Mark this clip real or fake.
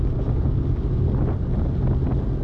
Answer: real